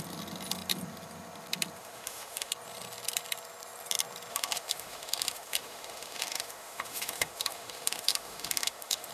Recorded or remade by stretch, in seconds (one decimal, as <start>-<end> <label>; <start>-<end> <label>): 0.0-1.8 recorded; 1.8-2.5 remade; 2.5-4.3 recorded; 4.3-9.1 remade